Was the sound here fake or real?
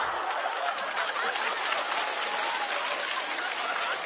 real